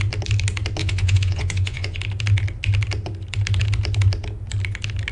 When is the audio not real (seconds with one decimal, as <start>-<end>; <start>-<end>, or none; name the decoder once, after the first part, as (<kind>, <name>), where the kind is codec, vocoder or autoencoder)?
0.8-2.0 (vocoder, Vocos)